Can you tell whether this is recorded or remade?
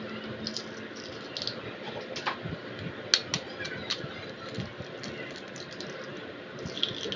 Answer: recorded